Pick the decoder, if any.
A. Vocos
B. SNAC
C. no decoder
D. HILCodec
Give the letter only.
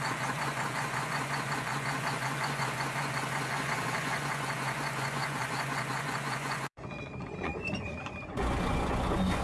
A